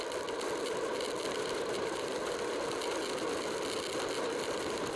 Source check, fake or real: real